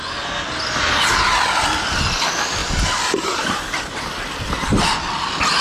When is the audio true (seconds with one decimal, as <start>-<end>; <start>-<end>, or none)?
0.0-2.6; 3.5-5.6

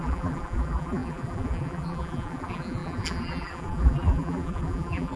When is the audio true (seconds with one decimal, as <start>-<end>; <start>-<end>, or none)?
none

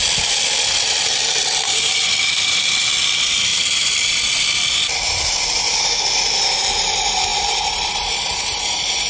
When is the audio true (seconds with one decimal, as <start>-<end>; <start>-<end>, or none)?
3.0-3.5; 5.7-7.3

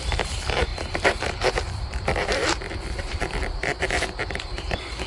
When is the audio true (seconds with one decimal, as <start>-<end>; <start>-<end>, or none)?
2.4-3.0

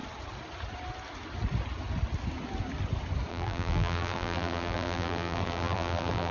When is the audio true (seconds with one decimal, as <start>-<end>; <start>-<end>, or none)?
0.0-3.3